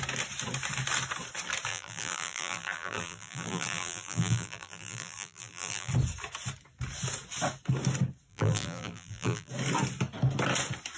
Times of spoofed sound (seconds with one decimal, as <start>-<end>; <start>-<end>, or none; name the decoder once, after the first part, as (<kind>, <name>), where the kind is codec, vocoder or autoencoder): 1.7-5.9 (vocoder, BigVGAN v2); 8.3-9.5